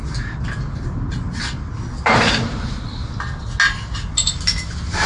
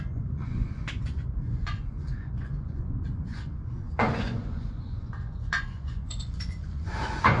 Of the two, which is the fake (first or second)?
second